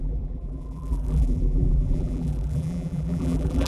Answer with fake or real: fake